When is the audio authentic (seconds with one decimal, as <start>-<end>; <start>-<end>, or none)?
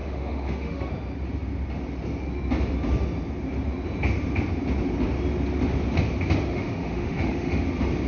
0.9-6.5; 7.6-8.1